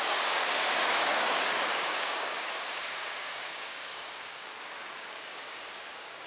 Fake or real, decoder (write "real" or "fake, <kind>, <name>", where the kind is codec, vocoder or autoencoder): fake, codec, DAC